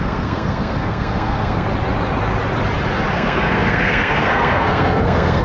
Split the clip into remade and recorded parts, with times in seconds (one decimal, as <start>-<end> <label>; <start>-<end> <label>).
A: 0.0-1.7 remade; 1.7-3.1 recorded; 3.1-5.4 remade